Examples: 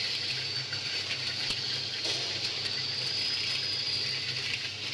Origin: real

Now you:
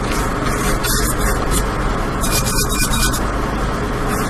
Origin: real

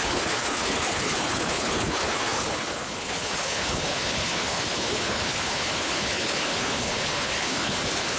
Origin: fake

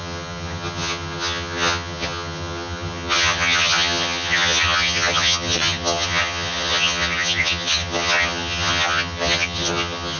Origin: fake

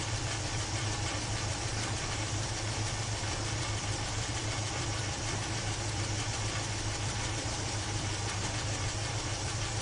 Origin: fake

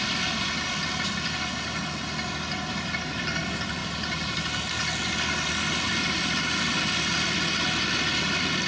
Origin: real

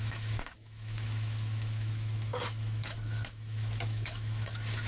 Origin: fake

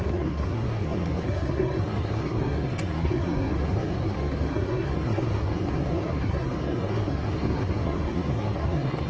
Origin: fake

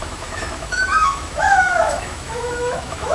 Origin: fake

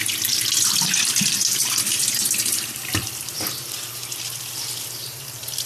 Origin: fake